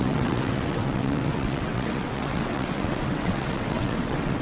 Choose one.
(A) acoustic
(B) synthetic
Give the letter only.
B